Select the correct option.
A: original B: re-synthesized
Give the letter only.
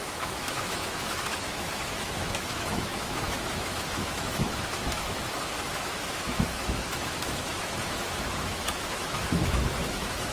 B